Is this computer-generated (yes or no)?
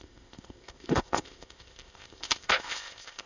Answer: yes